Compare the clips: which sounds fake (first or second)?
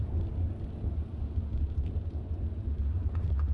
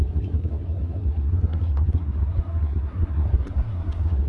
second